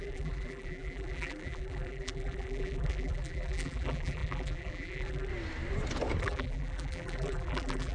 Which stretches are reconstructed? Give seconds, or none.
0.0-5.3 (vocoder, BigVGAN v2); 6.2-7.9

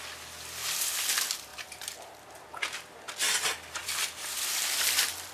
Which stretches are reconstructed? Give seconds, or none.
1.5-2.8 (vocoder, BigVGAN v2); 3.8-5.3